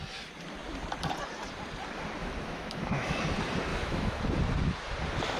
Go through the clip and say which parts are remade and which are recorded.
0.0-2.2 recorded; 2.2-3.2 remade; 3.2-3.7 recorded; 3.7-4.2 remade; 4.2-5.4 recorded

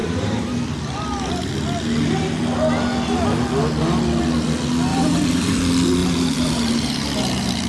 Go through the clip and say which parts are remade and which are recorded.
0.0-1.5 remade; 1.5-4.9 recorded; 4.9-5.6 remade; 5.6-6.0 recorded; 6.0-7.7 remade

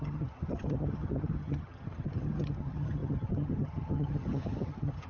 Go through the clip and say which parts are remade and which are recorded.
0.0-5.1 remade

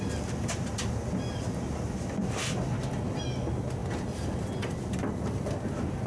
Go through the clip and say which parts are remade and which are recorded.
0.0-6.1 recorded